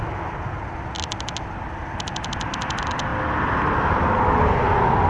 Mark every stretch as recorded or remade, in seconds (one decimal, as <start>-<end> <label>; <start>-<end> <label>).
0.0-5.1 recorded

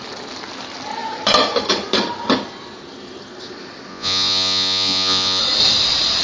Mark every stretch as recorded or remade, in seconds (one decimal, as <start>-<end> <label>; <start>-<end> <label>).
0.0-3.9 recorded; 3.9-5.4 remade; 5.4-6.2 recorded

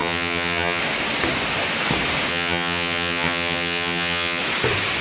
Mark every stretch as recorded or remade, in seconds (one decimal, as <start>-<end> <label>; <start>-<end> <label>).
0.0-0.8 remade; 0.8-2.3 recorded; 2.3-4.4 remade; 4.4-5.0 recorded

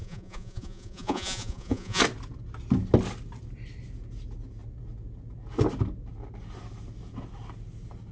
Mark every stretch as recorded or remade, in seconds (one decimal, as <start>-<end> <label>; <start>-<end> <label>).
0.0-2.0 remade; 2.0-8.1 recorded

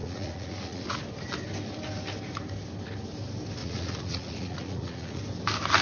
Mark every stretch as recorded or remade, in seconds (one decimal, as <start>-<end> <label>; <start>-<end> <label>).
0.0-1.0 remade; 1.0-3.6 recorded; 3.6-5.2 remade; 5.2-5.8 recorded

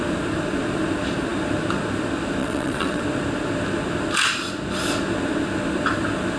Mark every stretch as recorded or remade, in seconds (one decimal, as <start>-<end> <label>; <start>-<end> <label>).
0.0-2.4 recorded; 2.4-3.0 remade; 3.0-6.4 recorded

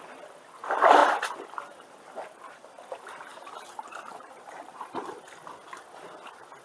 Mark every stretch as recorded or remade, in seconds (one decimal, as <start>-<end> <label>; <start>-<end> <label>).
0.0-3.3 recorded; 3.3-5.1 remade; 5.1-6.6 recorded